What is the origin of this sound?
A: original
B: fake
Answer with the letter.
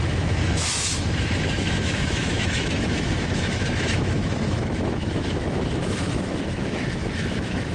B